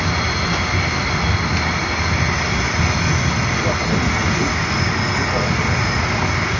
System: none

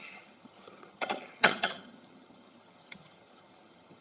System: vocoder, HiFi-GAN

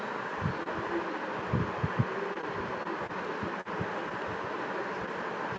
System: none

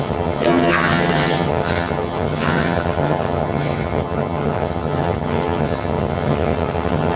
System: vocoder, HiFi-GAN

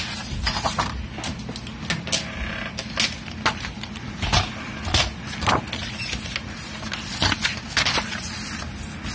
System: none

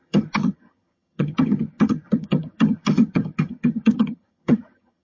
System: vocoder, HiFi-GAN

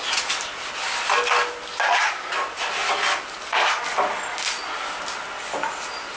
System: none